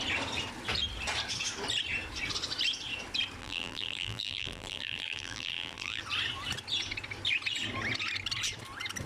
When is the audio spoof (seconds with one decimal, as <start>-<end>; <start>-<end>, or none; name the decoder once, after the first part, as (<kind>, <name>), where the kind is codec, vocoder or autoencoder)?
3.4-6.0 (vocoder, BigVGAN v2)